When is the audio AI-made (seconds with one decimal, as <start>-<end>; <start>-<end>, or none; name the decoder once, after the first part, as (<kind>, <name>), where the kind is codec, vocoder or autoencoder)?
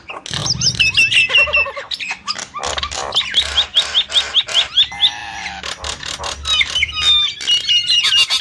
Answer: none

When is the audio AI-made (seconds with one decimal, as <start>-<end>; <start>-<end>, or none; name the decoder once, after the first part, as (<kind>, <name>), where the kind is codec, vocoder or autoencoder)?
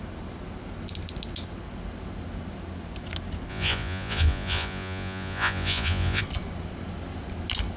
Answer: 3.5-6.2 (vocoder, Vocos)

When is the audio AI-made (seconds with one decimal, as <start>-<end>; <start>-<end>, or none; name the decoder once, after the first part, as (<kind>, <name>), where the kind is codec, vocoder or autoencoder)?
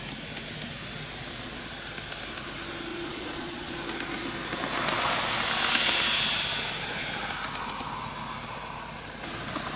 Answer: 2.9-3.8 (vocoder, Vocos)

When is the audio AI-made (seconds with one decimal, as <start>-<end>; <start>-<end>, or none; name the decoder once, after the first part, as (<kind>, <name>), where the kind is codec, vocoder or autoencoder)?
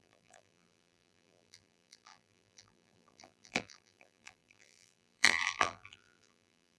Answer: 0.0-6.8 (vocoder, BigVGAN v2)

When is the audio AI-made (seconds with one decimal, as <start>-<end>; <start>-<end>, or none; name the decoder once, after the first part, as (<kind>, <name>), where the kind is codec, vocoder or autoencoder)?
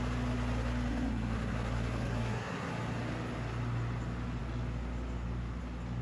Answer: 0.9-2.7 (codec, SNAC)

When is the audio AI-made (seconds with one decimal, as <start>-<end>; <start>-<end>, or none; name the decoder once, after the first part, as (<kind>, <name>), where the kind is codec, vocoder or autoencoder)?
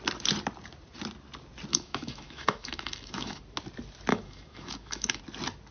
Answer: 1.7-3.4 (autoencoder, DAC-VAE); 4.1-5.2